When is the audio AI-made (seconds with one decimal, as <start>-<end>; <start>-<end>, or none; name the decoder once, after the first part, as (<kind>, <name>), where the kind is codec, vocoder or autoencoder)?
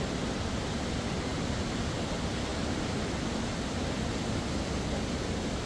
none